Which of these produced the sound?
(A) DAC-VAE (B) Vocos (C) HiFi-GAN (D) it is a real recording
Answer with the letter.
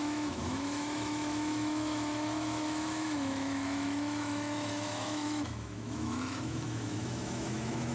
A